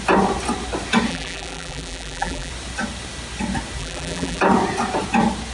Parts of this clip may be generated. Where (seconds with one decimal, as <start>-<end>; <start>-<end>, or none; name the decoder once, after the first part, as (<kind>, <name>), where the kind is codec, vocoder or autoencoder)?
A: 1.1-2.5 (vocoder, BigVGAN v2); 3.8-4.4